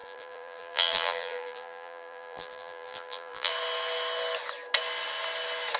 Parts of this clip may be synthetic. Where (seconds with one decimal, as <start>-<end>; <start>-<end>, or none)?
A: 0.0-3.5